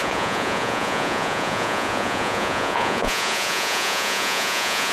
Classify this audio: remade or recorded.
remade